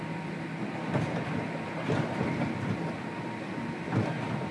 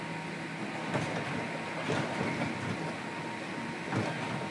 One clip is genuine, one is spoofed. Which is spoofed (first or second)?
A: first